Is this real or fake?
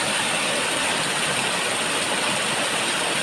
real